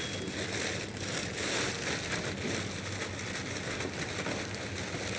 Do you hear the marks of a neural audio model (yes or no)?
no